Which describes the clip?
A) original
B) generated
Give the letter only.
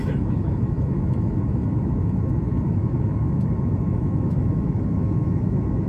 B